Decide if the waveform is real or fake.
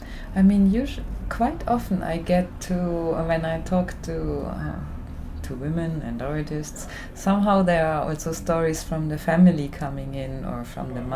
real